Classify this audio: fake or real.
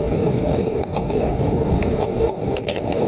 fake